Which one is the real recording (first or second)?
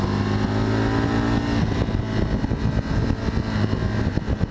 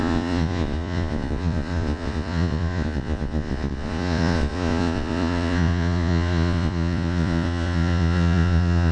first